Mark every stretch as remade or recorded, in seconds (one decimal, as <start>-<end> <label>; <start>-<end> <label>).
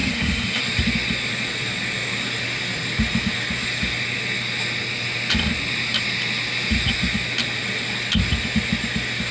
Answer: 0.0-0.6 remade; 0.6-9.3 recorded